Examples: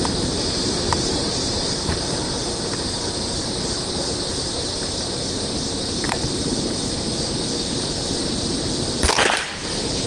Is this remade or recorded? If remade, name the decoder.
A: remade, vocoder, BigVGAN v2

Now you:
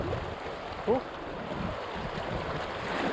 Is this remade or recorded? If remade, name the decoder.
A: recorded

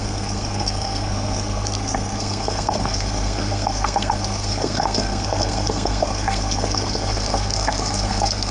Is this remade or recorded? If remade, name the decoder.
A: remade, codec, SNAC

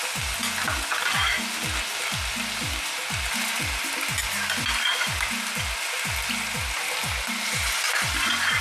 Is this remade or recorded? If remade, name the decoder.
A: recorded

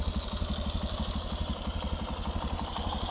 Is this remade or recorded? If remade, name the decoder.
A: recorded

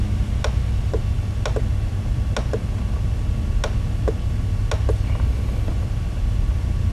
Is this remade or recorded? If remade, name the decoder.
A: recorded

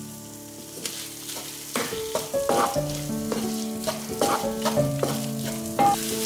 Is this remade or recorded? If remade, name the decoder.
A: recorded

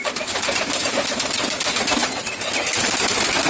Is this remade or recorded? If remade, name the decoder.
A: recorded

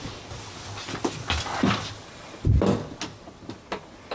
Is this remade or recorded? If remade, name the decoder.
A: recorded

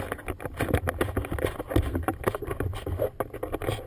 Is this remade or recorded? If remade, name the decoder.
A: recorded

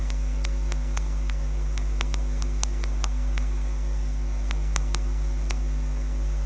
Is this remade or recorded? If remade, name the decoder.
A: remade, codec, SNAC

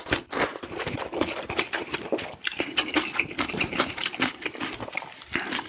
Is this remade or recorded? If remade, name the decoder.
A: remade, vocoder, BigVGAN v2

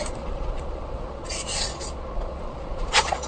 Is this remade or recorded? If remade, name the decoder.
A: remade, vocoder, Vocos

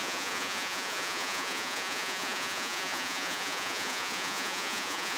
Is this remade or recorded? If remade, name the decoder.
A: remade, vocoder, Vocos